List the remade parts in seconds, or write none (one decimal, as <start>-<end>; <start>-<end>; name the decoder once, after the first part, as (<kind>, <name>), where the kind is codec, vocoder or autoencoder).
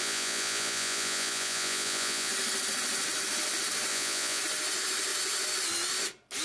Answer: 0.0-2.3 (vocoder, Vocos); 3.9-4.4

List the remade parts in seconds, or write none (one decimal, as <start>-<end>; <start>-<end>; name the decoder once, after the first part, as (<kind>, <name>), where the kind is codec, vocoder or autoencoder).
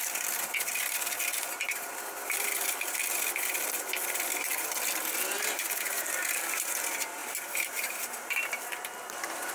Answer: 7.2-8.6 (vocoder, BigVGAN v2)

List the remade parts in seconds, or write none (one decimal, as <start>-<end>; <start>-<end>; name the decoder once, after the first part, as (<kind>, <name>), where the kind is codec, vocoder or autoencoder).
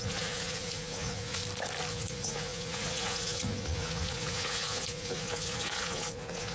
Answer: 0.0-1.4 (vocoder, Vocos); 1.9-6.5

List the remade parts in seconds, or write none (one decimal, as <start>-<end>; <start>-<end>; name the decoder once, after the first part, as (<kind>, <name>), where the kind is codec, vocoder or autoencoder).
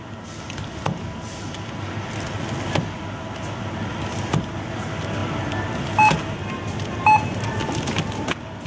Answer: none